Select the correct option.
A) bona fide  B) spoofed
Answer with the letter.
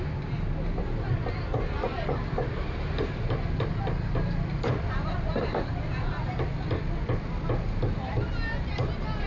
A